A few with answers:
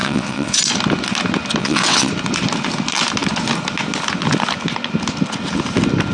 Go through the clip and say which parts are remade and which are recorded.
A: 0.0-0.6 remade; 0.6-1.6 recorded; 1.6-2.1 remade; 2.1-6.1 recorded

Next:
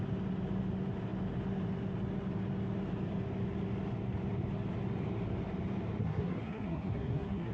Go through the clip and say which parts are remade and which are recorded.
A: 0.0-6.0 recorded; 6.0-7.5 remade

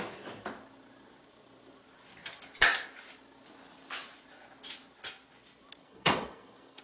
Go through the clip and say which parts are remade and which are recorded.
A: 0.0-5.8 recorded; 5.8-6.8 remade